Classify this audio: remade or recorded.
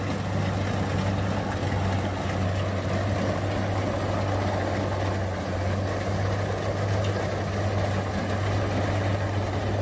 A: recorded